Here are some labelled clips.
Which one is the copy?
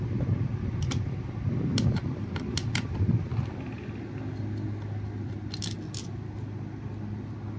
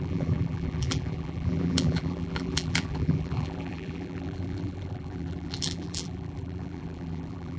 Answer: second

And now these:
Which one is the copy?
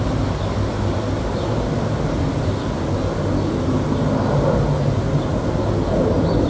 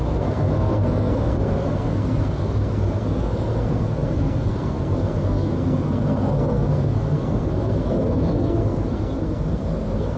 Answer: second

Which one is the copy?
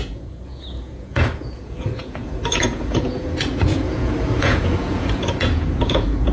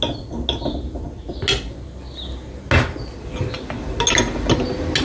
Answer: first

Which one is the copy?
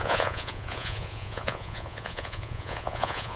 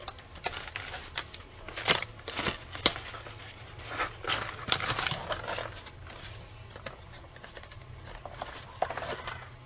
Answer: first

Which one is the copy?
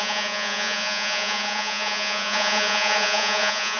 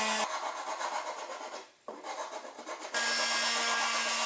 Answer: first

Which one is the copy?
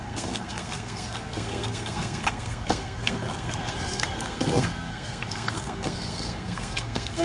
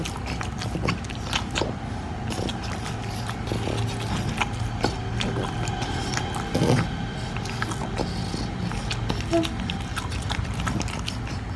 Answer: first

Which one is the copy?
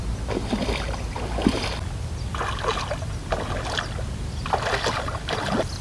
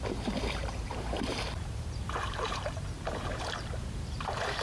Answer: second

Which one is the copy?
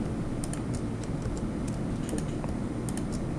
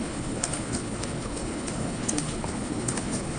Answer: second